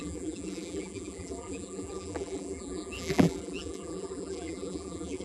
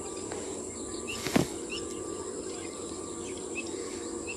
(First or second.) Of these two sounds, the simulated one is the first